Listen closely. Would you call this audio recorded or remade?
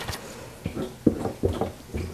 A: recorded